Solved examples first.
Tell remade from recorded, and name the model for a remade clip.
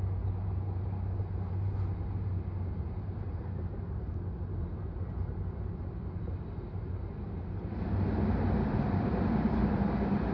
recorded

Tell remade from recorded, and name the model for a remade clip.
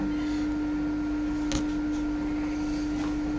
recorded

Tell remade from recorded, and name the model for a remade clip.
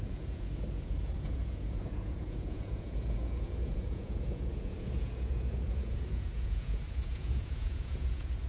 remade, vocoder, Vocos